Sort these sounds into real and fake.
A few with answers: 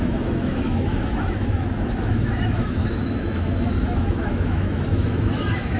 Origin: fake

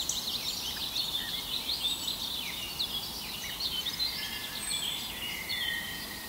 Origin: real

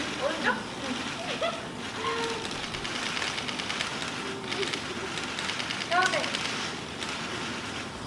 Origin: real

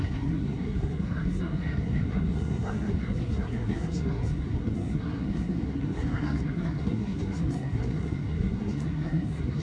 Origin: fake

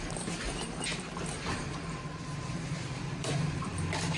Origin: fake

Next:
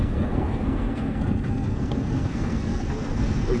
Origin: fake